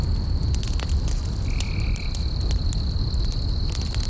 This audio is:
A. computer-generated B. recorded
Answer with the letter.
B